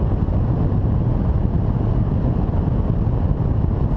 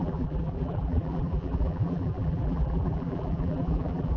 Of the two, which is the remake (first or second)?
second